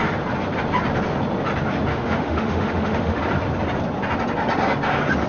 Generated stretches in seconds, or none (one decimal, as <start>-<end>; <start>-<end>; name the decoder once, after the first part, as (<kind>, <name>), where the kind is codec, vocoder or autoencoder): 1.9-3.2 (autoencoder, DAC-VAE)